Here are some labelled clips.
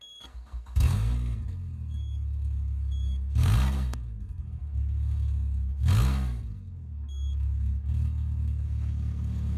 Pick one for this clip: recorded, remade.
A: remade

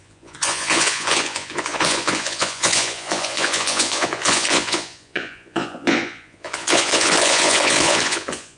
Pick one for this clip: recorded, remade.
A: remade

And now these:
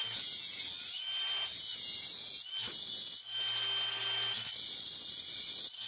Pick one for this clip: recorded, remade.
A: recorded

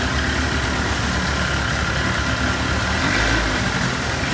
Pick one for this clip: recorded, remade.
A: recorded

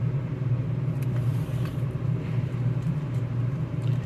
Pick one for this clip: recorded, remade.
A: remade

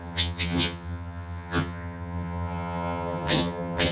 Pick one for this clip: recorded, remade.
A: remade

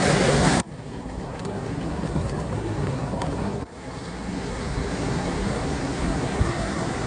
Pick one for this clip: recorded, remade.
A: remade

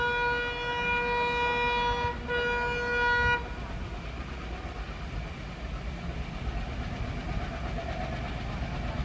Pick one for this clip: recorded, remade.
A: recorded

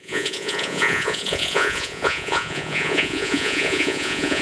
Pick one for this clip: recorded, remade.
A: remade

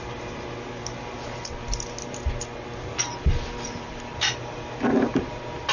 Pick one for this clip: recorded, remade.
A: recorded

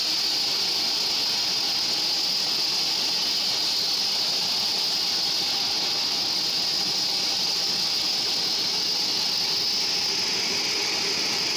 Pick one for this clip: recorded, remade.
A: recorded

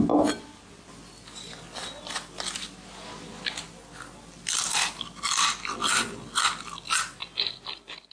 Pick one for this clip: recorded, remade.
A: recorded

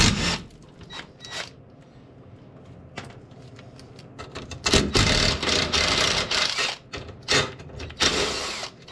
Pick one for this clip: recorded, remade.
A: recorded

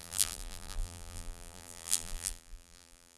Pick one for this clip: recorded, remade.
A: remade